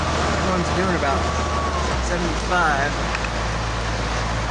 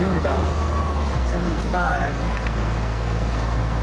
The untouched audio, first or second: first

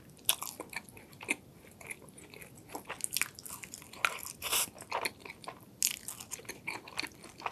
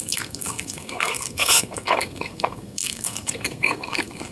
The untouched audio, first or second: first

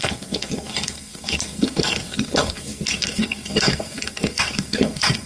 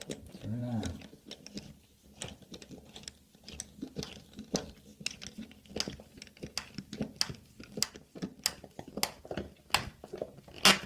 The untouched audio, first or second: second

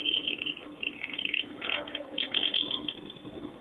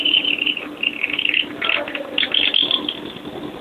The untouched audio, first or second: second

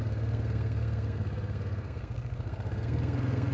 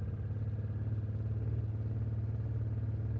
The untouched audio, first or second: second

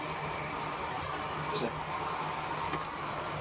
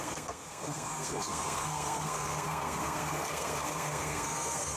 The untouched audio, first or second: first